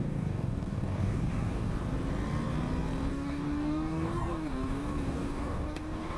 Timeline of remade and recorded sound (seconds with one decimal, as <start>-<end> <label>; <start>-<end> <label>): 0.0-1.7 remade; 1.7-3.1 recorded; 3.1-6.2 remade